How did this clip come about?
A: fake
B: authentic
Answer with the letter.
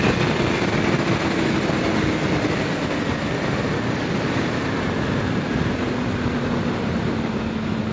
B